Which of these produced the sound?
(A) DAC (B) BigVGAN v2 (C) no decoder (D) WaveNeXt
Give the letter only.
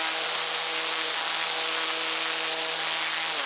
C